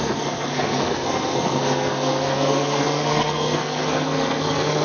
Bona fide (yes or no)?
no